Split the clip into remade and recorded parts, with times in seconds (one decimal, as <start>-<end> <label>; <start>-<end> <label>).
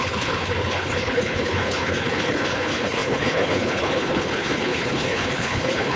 0.0-6.0 remade